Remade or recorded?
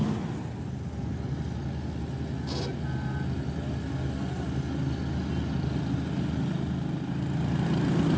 recorded